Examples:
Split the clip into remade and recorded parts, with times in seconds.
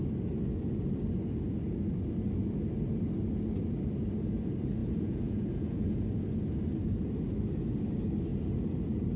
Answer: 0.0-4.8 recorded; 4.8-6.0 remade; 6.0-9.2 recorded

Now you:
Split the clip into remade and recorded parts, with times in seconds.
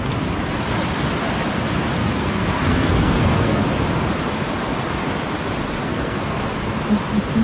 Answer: 0.0-2.0 recorded; 2.0-3.6 remade; 3.6-5.8 recorded; 5.8-6.4 remade; 6.4-7.4 recorded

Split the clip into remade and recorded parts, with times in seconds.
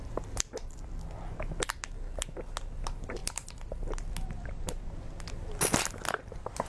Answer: 0.0-6.7 recorded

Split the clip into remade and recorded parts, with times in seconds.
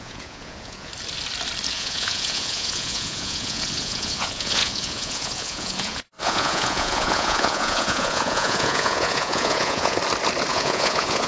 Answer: 0.0-0.9 remade; 0.9-1.7 recorded; 1.7-10.0 remade; 10.0-10.5 recorded; 10.5-11.3 remade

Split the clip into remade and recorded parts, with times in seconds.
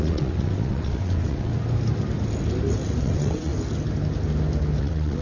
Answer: 0.0-1.5 remade; 1.5-3.0 recorded; 3.0-3.5 remade; 3.5-4.8 recorded; 4.8-5.2 remade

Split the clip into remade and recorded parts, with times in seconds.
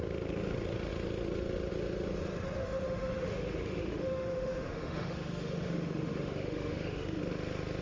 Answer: 0.0-2.6 recorded; 2.6-7.2 remade; 7.2-7.8 recorded